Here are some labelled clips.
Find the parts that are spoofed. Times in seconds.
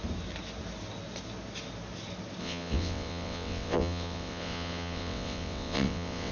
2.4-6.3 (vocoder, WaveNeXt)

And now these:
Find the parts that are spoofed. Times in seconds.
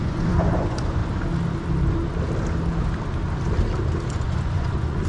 0.0-1.0 (vocoder, Vocos); 4.1-5.1